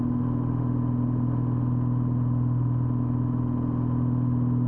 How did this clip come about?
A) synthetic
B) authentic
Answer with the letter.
B